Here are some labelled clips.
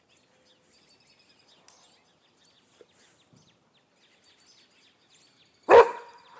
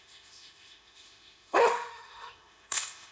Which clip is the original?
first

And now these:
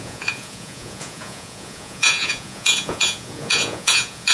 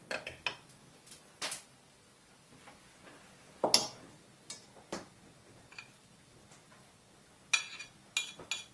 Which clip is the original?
second